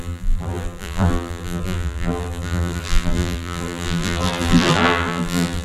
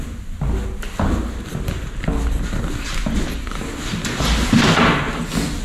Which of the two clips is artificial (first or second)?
first